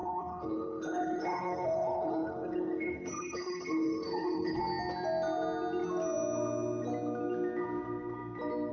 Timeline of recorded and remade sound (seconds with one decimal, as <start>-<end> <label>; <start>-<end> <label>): 0.0-4.6 remade; 4.6-8.7 recorded